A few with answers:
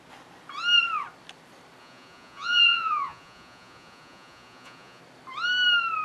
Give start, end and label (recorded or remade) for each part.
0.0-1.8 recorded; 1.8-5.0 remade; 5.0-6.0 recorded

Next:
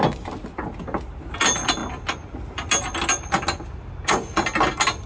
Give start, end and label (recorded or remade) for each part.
0.0-5.1 recorded

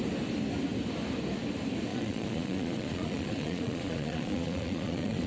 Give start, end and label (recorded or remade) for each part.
0.0-1.9 recorded; 1.9-5.3 remade

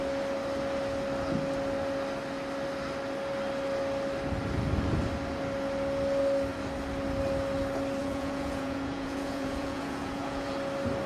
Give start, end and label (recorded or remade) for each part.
0.0-8.0 recorded; 8.0-10.5 remade; 10.5-11.1 recorded

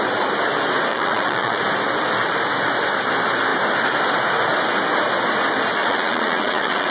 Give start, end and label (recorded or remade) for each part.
0.0-0.9 recorded; 0.9-1.6 remade; 1.6-5.8 recorded; 5.8-6.9 remade